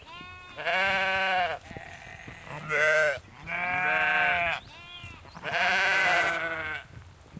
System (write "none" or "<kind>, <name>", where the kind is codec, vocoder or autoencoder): none